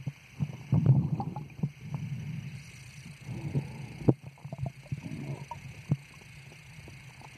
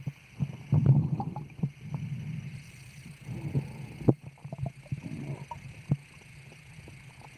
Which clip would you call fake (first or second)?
first